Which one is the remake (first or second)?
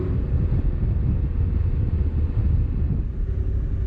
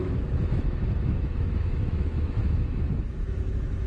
second